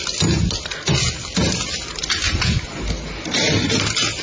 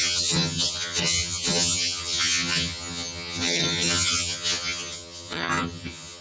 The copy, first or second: second